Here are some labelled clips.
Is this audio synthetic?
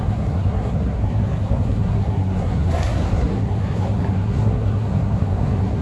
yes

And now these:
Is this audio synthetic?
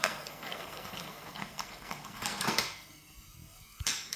yes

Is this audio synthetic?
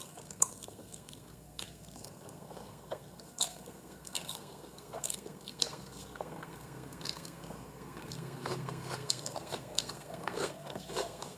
yes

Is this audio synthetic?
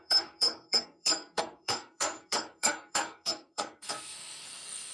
yes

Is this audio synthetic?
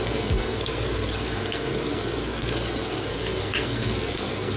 yes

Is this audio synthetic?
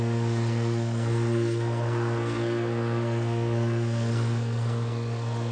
yes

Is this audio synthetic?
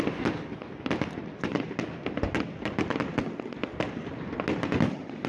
no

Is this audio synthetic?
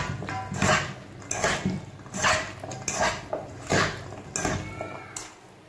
no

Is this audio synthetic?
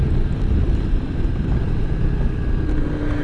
no